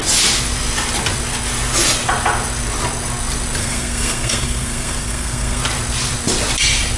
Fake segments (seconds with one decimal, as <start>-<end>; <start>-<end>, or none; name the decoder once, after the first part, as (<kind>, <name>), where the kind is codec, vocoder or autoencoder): 3.6-5.6 (codec, SNAC)